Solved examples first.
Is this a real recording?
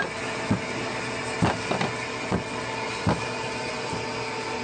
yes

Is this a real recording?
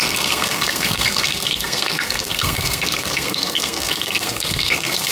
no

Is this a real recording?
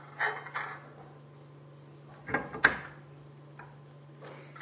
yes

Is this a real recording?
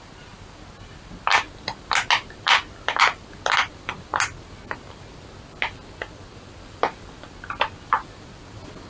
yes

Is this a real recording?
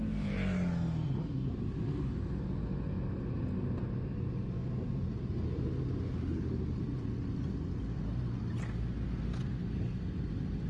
yes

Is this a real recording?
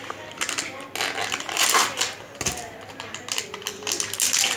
yes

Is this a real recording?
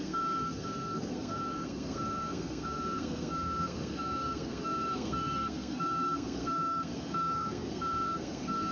no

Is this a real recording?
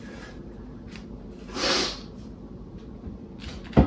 yes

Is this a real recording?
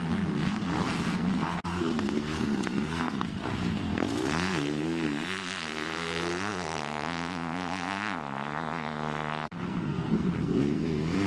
no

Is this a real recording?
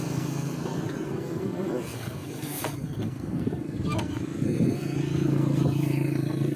no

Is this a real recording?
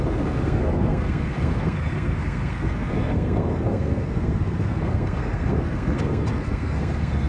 no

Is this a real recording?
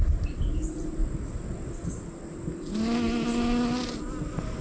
yes